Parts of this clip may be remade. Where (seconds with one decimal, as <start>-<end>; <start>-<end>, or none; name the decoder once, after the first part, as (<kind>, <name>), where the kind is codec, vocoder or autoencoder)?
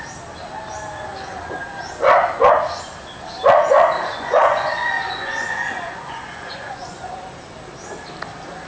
4.1-7.2 (vocoder, Vocos)